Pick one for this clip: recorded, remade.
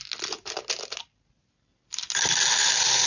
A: recorded